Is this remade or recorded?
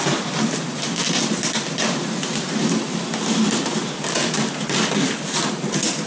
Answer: recorded